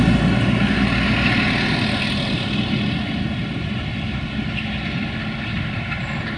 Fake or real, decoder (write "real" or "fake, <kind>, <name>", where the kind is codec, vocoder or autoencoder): real